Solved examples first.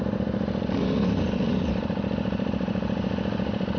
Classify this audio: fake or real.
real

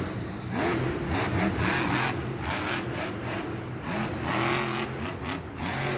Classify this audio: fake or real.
real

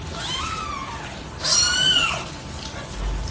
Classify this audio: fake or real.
real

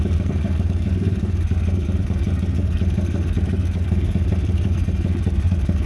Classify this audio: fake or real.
fake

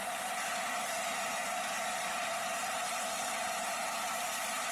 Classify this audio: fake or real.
real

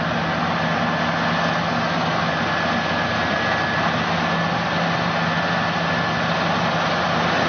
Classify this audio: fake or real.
real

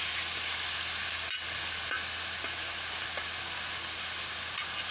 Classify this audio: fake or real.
real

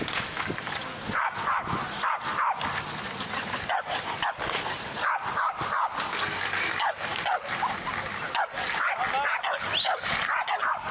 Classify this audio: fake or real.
real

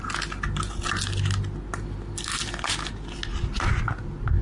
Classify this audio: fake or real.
real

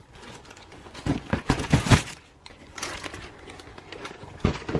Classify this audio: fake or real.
fake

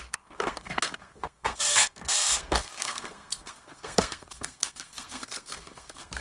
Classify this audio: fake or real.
fake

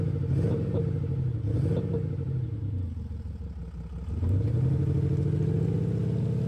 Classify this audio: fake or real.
real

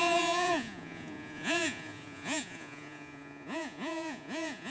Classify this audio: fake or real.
fake